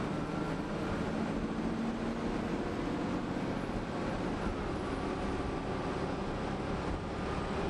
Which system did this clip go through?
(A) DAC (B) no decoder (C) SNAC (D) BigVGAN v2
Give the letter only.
B